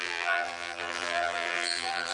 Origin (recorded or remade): remade